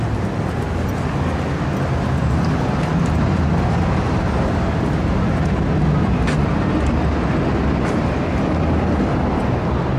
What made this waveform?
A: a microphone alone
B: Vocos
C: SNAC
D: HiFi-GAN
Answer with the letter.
A